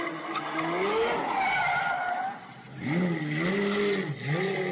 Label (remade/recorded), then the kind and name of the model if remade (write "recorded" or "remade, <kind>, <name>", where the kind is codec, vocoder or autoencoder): recorded